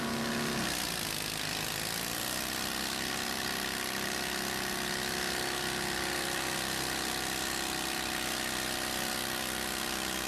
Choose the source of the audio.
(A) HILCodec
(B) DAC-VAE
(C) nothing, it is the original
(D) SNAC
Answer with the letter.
C